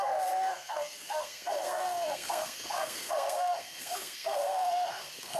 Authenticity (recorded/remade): remade